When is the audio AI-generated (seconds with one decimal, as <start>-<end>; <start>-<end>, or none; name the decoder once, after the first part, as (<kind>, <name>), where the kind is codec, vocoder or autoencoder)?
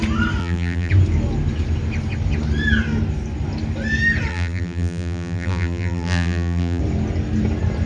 0.4-0.9 (vocoder, BigVGAN v2); 4.3-6.8